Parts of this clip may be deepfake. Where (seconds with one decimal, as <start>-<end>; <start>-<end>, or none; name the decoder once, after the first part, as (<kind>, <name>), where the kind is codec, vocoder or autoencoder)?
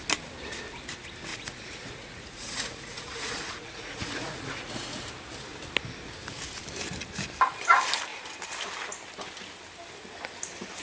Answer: 1.3-5.1 (vocoder, Vocos)